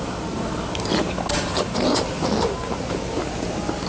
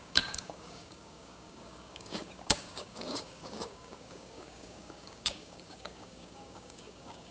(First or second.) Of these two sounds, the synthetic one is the second